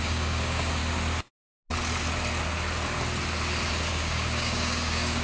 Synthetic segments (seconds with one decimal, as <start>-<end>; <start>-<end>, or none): 0.0-0.8; 3.9-5.2